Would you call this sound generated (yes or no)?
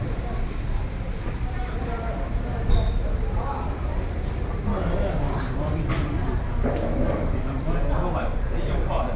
yes